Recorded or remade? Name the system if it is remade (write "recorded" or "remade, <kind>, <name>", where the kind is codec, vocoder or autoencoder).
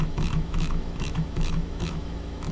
remade, autoencoder, DAC-VAE